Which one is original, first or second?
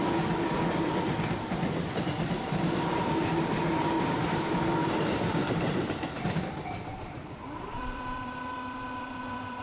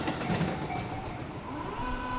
second